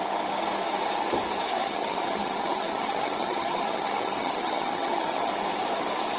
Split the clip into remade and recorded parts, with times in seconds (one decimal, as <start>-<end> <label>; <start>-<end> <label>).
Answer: 0.0-1.6 recorded; 1.6-5.3 remade; 5.3-6.2 recorded

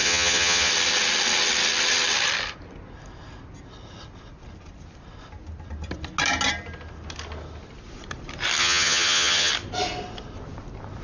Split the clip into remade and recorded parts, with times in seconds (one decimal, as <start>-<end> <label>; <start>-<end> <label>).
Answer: 0.0-0.7 remade; 0.7-8.6 recorded; 8.6-9.5 remade; 9.5-11.0 recorded

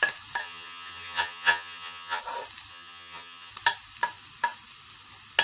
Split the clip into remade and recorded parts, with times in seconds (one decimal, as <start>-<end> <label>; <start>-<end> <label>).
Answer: 0.0-0.4 recorded; 0.4-2.2 remade; 2.2-2.7 recorded; 2.7-3.5 remade; 3.5-5.4 recorded

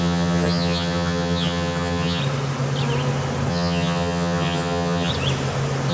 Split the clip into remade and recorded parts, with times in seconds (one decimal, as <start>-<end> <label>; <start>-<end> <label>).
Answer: 0.0-2.2 remade; 2.2-3.5 recorded; 3.5-5.1 remade; 5.1-5.9 recorded

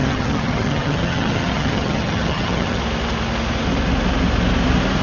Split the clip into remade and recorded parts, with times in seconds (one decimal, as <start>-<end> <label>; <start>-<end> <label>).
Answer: 0.0-2.8 remade; 2.8-5.0 recorded

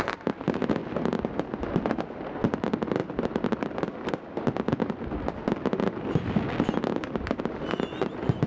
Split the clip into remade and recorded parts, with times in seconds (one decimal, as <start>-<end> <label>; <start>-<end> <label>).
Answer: 0.0-8.5 recorded

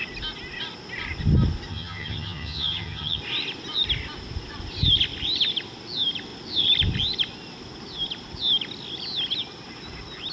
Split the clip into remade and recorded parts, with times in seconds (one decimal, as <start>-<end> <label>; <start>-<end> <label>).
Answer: 0.0-1.7 recorded; 1.7-3.2 remade; 3.2-10.3 recorded